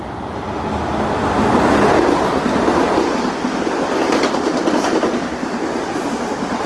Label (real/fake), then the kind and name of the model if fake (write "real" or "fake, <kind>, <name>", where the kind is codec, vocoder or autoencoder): real